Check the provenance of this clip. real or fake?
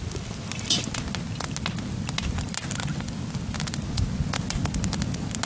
real